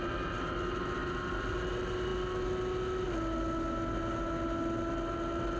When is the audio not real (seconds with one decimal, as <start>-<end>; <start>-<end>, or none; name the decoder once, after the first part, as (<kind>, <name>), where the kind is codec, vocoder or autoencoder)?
none